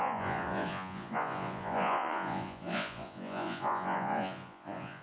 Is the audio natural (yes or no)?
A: no